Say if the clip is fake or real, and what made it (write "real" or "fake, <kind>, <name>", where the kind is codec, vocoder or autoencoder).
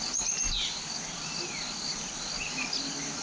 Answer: real